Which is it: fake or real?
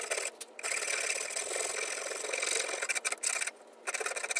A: real